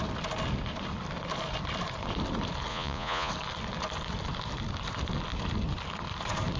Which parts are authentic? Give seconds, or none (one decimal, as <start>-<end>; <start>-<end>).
0.0-2.7; 3.3-6.6